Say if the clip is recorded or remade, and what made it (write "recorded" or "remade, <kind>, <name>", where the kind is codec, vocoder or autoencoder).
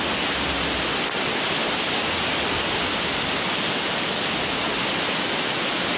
recorded